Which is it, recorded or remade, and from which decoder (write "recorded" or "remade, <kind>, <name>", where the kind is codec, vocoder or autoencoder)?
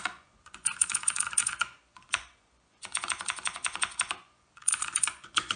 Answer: remade, vocoder, Vocos